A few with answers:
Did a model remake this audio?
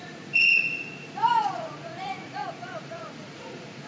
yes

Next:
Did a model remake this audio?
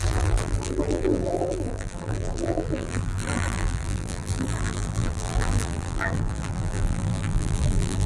yes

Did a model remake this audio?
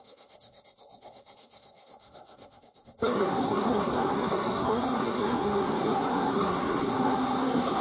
yes